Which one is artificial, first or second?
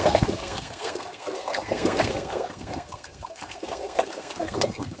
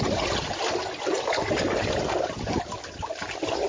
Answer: first